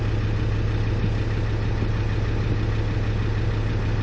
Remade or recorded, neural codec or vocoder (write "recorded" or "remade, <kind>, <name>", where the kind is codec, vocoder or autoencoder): recorded